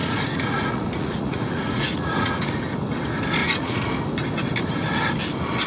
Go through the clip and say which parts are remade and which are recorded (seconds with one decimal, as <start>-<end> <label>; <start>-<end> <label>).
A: 0.0-2.6 remade; 2.6-3.4 recorded; 3.4-3.9 remade; 3.9-5.7 recorded